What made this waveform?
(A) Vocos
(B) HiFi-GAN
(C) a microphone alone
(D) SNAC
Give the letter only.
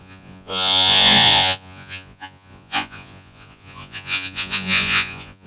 A